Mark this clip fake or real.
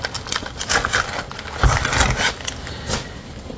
real